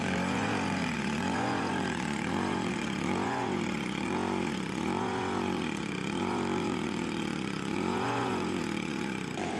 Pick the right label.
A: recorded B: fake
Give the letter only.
B